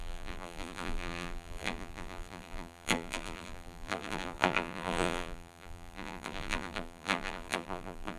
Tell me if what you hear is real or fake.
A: fake